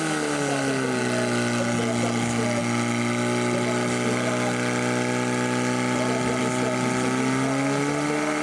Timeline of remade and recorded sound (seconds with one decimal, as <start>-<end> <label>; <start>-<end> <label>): 0.0-8.4 recorded